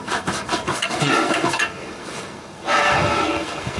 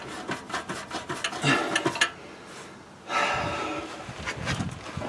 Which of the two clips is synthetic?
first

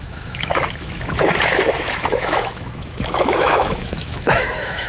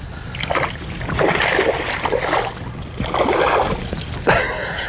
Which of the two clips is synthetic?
first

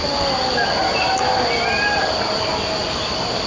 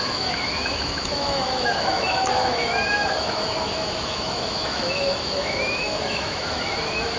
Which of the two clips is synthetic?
second